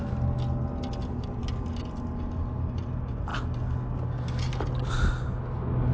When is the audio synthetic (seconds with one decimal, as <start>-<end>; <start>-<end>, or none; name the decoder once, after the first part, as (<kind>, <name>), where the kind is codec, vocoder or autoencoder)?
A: none